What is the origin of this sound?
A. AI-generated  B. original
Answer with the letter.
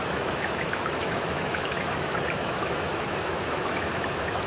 A